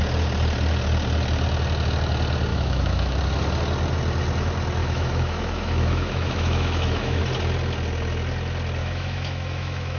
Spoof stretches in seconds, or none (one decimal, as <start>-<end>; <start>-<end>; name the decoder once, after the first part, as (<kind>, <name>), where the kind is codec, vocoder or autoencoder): 2.5-3.2 (autoencoder, DAC-VAE); 4.8-7.2; 8.8-10.0